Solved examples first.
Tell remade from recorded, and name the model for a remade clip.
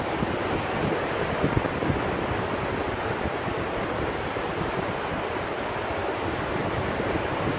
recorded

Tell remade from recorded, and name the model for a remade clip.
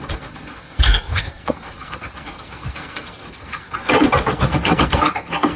remade, codec, SNAC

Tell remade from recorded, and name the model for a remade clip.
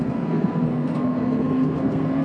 remade, codec, SNAC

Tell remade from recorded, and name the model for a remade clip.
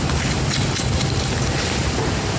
recorded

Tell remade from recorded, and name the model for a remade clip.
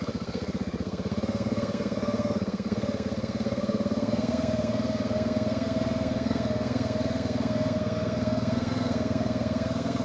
remade, codec, SNAC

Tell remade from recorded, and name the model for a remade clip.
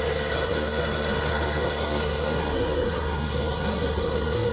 remade, codec, SNAC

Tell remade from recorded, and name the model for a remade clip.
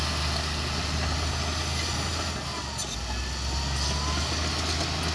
recorded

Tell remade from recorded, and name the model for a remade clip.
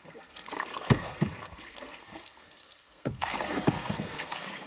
remade, codec, SNAC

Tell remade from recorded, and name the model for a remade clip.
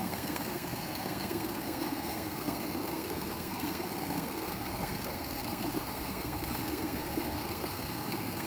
remade, codec, SNAC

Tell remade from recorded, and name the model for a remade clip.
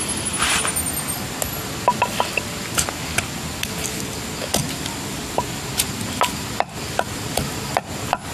recorded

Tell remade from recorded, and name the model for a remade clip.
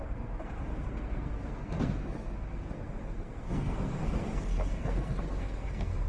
remade, codec, SNAC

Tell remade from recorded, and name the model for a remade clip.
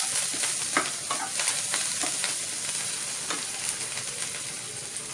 recorded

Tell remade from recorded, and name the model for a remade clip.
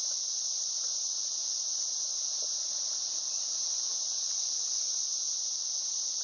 recorded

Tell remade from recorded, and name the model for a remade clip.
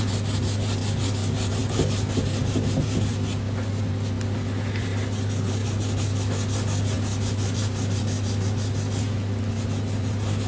recorded